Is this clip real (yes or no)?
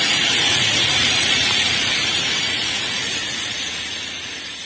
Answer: no